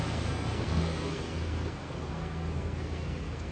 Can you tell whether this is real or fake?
fake